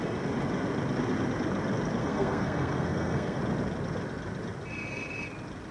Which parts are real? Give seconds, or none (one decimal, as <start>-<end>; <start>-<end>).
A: 0.0-2.0; 3.4-5.7